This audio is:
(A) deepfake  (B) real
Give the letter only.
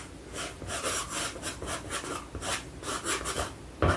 B